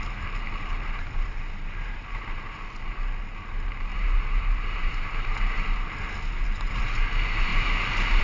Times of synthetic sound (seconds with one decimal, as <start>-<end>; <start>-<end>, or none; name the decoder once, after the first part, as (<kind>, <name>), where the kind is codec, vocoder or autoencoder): 3.9-5.1 (vocoder, BigVGAN v2)